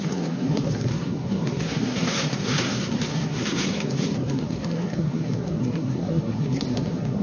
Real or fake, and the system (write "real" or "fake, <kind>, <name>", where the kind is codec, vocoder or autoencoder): fake, codec, SNAC